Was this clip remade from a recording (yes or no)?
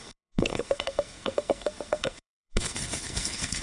yes